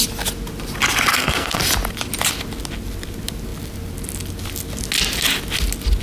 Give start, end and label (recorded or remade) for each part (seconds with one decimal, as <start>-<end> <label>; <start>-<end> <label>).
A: 0.0-1.1 recorded; 1.1-1.6 remade; 1.6-6.0 recorded